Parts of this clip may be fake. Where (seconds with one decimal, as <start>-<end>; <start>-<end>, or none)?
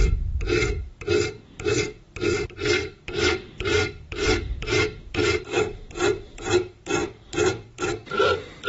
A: 2.8-7.9